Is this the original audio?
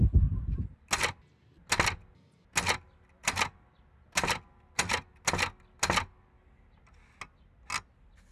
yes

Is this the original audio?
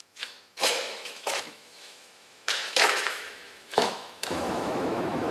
no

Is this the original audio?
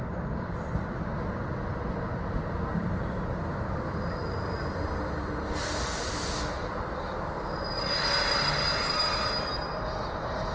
yes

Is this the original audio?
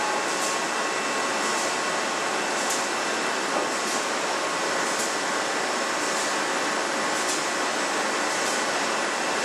yes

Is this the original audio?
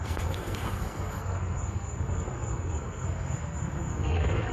no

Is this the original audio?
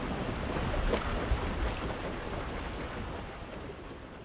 yes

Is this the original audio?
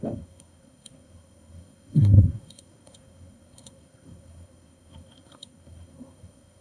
no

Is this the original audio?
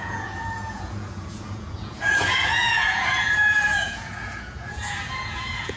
no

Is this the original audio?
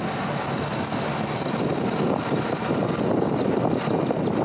yes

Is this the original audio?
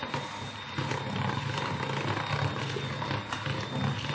yes